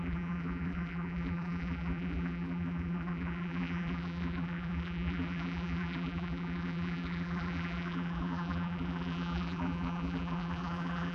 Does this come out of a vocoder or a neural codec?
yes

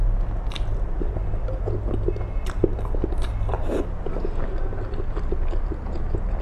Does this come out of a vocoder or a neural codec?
no